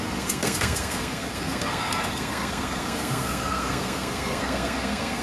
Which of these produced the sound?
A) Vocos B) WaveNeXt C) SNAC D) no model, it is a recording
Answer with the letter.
C